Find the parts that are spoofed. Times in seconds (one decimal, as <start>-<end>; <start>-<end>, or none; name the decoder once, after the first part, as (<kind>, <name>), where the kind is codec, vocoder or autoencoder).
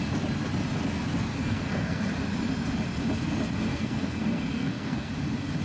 1.4-2.1 (codec, SNAC); 3.7-5.1